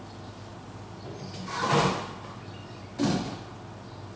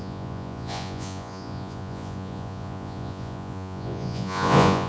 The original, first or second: first